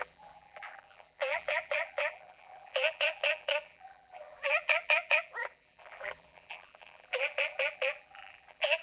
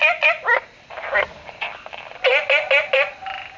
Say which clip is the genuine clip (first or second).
second